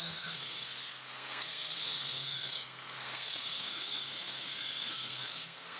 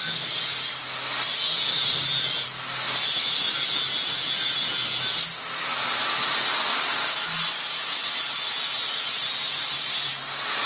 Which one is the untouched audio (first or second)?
second